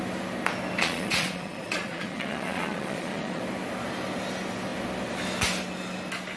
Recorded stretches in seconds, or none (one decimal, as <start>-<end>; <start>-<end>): 0.0-0.8; 3.4-6.4